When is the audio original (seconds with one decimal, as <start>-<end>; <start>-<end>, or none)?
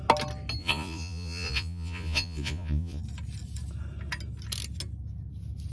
0.0-0.6; 3.0-5.7